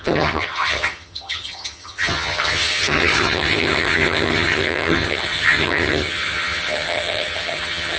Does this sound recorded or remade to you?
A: remade